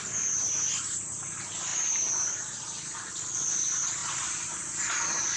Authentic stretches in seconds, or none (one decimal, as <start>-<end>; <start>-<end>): 0.0-5.4